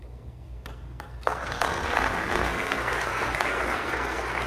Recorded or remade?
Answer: remade